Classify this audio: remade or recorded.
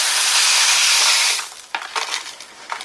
recorded